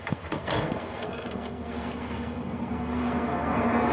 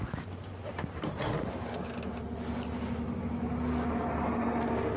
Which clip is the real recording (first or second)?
second